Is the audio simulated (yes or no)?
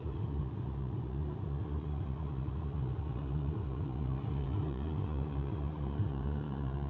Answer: yes